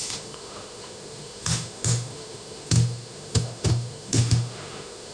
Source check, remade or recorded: remade